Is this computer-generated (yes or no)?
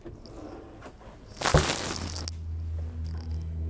no